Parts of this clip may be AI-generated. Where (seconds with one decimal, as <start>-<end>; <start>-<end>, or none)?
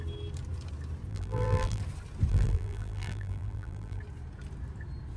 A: 1.1-1.8; 2.3-4.0